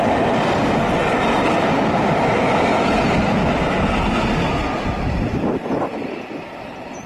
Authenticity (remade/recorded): recorded